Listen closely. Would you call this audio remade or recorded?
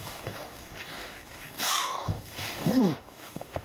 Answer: remade